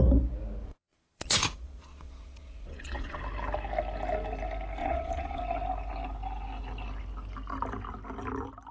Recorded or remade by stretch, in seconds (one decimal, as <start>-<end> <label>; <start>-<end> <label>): 0.0-0.6 recorded; 0.6-3.2 remade; 3.2-4.8 recorded; 4.8-5.4 remade; 5.4-8.7 recorded